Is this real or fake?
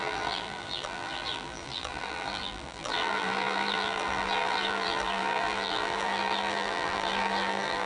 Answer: fake